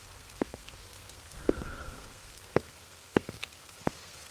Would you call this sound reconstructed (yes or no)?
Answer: yes